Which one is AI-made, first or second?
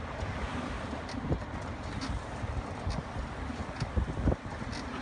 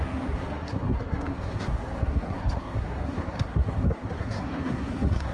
second